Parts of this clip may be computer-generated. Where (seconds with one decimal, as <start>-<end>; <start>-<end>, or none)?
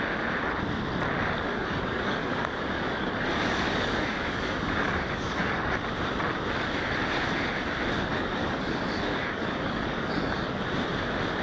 1.5-5.7; 8.1-10.6